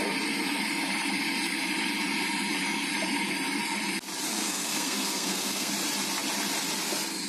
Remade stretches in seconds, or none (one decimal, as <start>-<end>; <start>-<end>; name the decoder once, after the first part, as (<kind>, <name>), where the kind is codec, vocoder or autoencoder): 4.3-5.7 (codec, SNAC)